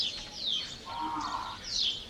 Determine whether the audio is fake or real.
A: real